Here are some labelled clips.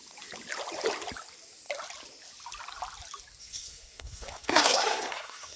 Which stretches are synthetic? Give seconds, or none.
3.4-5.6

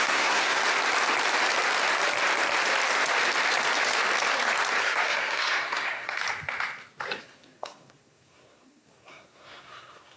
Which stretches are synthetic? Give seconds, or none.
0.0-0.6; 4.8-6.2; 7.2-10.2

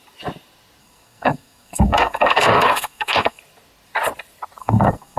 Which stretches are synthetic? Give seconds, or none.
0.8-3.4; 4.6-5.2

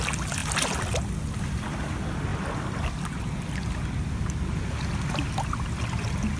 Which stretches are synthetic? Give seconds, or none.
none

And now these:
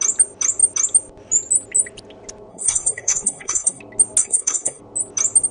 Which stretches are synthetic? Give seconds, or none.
2.5-3.8; 4.2-4.8